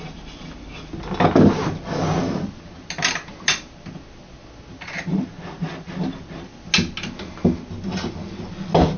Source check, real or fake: real